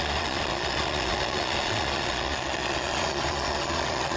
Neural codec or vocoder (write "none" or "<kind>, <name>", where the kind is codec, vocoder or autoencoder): vocoder, Vocos